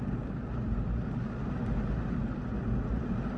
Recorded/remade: recorded